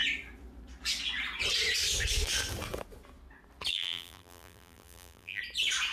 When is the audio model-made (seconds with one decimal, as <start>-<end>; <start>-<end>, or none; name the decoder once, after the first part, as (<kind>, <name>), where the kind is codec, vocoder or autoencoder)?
3.7-5.4 (vocoder, BigVGAN v2)